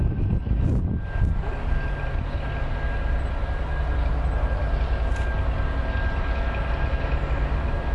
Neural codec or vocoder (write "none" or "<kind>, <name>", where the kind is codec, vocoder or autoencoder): none